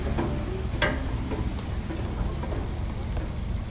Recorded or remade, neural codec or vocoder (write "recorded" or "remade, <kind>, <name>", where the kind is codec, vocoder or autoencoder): recorded